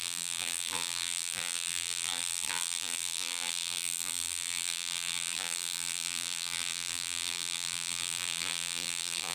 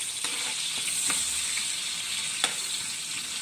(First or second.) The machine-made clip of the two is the first